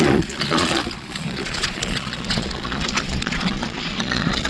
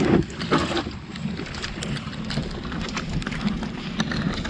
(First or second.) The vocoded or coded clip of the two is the first